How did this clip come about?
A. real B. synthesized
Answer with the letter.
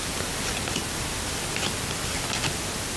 A